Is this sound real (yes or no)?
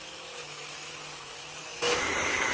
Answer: no